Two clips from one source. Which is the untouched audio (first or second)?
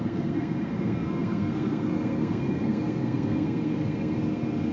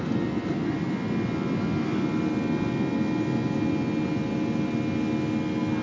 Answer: second